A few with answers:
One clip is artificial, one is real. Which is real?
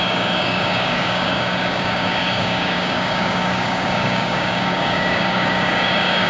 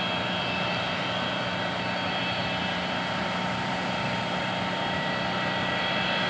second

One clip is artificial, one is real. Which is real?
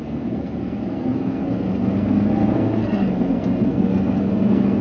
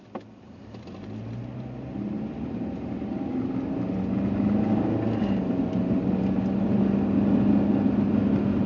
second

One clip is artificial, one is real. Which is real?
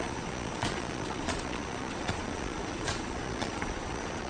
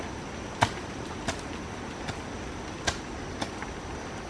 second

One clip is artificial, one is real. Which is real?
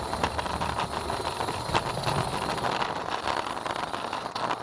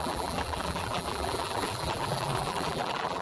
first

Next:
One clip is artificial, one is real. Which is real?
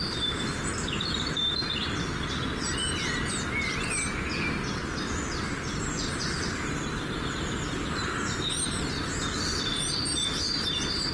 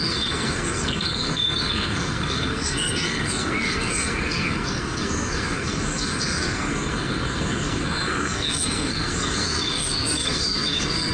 first